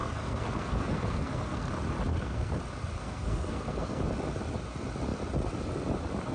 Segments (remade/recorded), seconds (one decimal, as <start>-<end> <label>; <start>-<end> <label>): 0.0-1.7 remade; 1.7-2.1 recorded; 2.1-2.6 remade; 2.6-3.0 recorded; 3.0-4.0 remade; 4.0-6.3 recorded